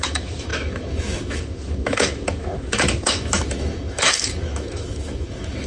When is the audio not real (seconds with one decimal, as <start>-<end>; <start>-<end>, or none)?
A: 0.0-5.7